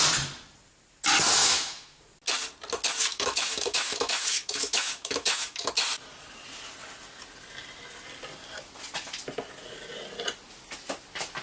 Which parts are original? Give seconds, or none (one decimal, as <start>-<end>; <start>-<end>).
0.0-1.4; 2.0-3.1; 5.7-11.4